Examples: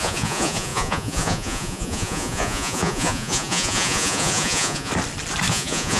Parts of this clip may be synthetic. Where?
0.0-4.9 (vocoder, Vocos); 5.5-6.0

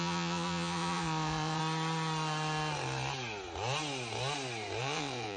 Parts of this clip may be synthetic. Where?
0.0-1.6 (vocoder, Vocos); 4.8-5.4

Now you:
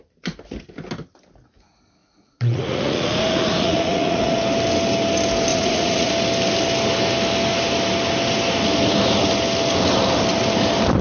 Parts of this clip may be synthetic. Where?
2.0-4.4 (vocoder, Vocos); 5.5-6.1

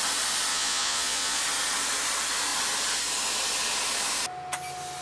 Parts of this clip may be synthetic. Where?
0.5-1.4 (vocoder, Vocos)